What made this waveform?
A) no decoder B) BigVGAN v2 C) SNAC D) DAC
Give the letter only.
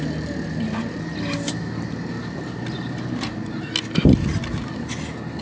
A